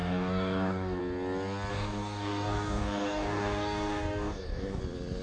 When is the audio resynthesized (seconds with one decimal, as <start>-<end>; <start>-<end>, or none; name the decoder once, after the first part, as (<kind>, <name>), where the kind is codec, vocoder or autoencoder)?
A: 0.0-1.0 (codec, DAC); 1.7-4.8